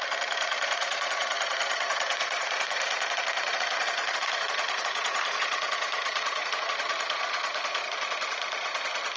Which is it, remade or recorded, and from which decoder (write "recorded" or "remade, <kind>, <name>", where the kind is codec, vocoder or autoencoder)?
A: remade, vocoder, Vocos